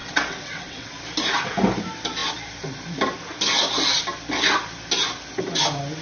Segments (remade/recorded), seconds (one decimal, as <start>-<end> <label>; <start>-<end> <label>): 0.0-0.9 remade; 0.9-6.0 recorded